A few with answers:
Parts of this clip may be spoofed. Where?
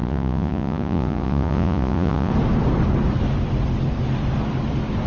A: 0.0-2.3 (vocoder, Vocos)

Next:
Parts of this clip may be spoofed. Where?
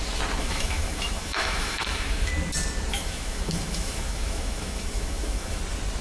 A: 0.4-2.3 (autoencoder, DAC-VAE); 2.9-5.6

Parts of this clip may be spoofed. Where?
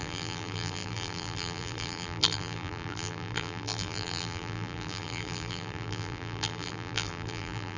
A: 0.0-7.8 (vocoder, BigVGAN v2)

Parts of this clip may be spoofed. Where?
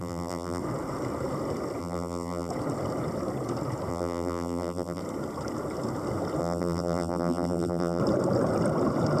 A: 0.0-0.6 (vocoder, BigVGAN v2); 1.8-2.5; 3.9-5.0; 6.4-8.0